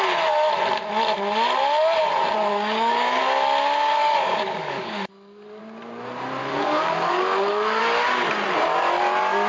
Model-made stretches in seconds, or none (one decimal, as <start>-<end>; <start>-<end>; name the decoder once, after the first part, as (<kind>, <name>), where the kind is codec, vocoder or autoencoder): 2.5-3.2 (codec, DAC); 4.0-5.6; 6.4-7.8